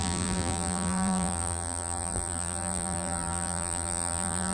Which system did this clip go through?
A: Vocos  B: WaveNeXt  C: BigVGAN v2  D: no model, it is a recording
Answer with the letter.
C